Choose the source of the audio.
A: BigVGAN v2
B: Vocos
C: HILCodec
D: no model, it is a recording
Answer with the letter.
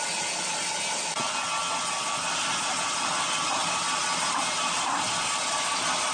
D